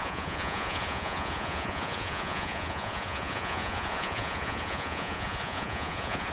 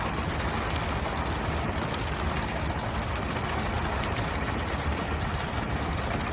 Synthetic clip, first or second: first